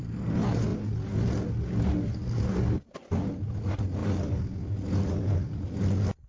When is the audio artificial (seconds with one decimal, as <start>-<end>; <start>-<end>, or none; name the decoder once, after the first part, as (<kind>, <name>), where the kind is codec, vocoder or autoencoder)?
none